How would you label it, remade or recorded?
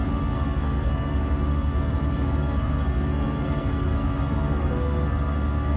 remade